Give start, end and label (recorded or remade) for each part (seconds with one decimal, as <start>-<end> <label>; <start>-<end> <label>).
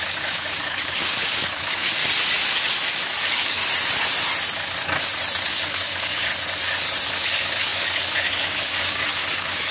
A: 0.0-2.0 remade; 2.0-2.9 recorded; 2.9-3.6 remade; 3.6-5.5 recorded; 5.5-6.3 remade; 6.3-7.1 recorded; 7.1-9.7 remade